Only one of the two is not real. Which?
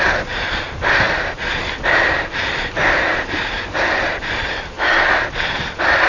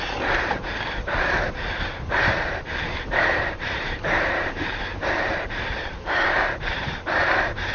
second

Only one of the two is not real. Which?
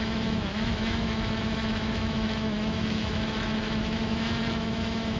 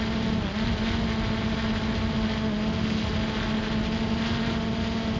first